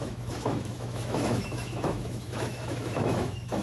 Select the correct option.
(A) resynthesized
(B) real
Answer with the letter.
A